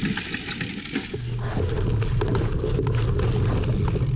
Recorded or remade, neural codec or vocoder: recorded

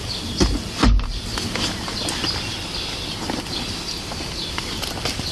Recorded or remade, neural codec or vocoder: recorded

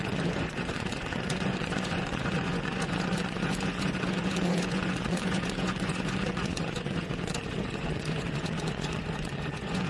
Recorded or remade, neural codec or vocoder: remade, vocoder, Vocos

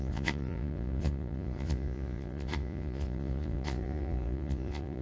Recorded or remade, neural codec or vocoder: remade, vocoder, Vocos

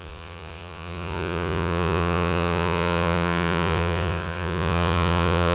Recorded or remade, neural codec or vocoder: remade, vocoder, Vocos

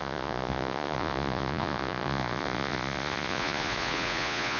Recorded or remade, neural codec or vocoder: remade, vocoder, Vocos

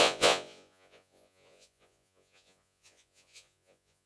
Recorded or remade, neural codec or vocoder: remade, vocoder, Vocos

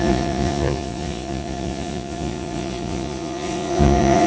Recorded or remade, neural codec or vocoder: remade, vocoder, Vocos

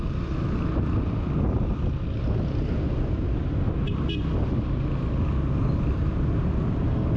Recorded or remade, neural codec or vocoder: recorded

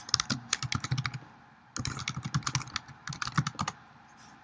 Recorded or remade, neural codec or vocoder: recorded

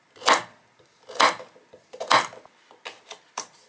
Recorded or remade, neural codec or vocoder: recorded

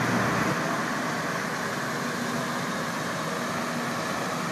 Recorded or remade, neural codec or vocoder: recorded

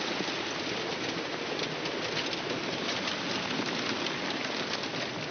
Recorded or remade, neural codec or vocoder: recorded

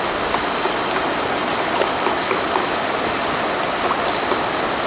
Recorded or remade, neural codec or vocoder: recorded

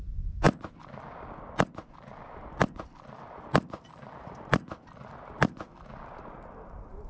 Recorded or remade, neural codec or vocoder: recorded